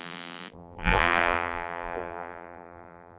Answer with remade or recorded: remade